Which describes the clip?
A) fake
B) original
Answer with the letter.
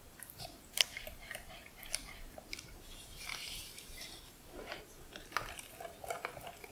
A